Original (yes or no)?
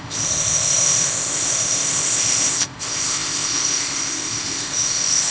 no